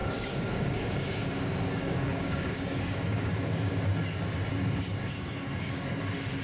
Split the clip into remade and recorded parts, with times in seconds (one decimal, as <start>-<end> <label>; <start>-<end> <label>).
0.0-3.8 remade; 3.8-4.5 recorded; 4.5-6.0 remade; 6.0-6.4 recorded